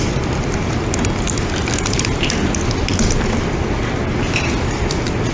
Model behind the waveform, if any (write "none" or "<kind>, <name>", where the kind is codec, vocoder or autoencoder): none